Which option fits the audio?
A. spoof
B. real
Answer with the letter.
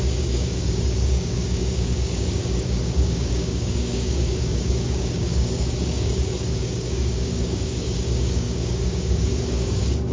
A